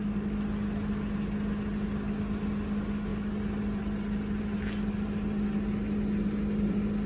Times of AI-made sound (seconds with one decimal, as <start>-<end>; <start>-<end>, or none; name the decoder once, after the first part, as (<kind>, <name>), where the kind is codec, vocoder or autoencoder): none